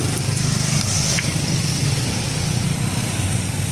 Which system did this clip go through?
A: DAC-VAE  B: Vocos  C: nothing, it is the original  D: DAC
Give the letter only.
C